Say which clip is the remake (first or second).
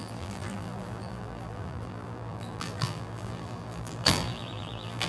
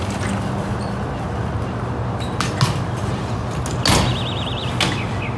first